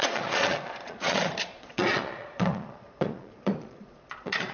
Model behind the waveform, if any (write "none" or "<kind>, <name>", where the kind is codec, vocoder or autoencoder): vocoder, Vocos